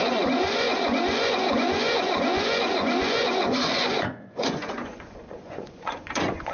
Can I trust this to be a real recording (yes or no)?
no